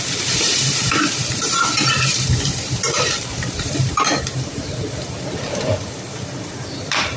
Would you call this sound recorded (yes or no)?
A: no